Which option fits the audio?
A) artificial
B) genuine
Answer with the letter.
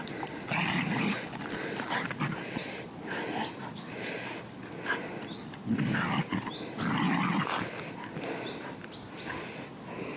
B